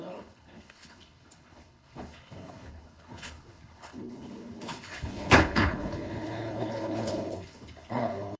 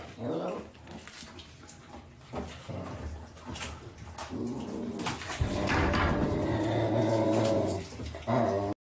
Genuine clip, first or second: second